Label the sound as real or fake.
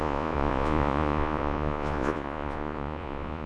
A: fake